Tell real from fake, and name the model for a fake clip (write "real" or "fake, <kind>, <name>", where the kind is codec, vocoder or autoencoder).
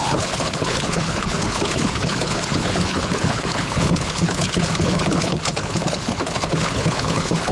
fake, codec, HILCodec